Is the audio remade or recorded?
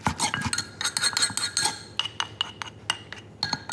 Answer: recorded